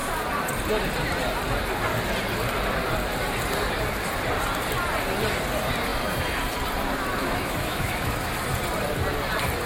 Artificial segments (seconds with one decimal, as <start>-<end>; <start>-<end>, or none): 7.2-8.3